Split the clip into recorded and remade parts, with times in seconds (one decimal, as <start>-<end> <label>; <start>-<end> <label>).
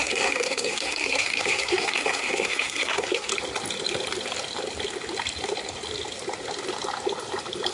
0.0-3.3 remade; 3.3-7.7 recorded